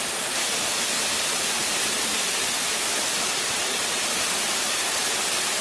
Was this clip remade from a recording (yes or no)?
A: no